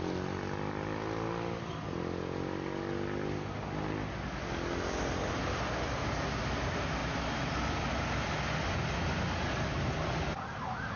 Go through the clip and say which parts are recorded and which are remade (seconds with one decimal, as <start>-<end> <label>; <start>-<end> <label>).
0.0-11.0 recorded